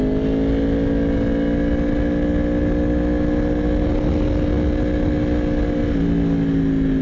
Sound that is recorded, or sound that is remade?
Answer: recorded